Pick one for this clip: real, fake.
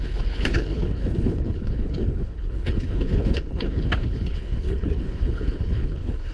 fake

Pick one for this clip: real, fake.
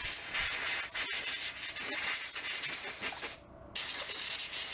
real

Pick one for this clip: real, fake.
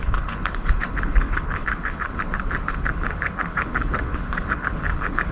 fake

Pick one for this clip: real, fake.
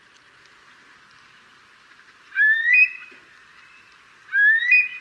real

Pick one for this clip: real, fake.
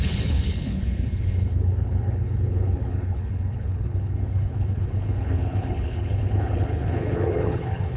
fake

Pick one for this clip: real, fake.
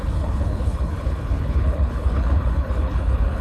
fake